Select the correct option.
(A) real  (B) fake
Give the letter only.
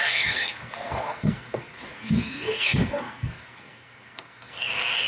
B